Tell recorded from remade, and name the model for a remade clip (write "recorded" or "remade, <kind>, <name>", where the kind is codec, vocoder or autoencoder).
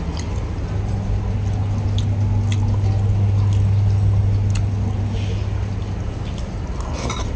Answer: recorded